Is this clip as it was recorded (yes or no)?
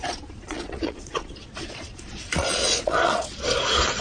no